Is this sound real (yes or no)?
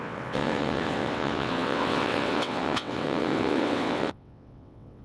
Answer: no